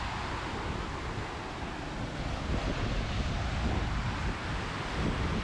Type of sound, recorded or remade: recorded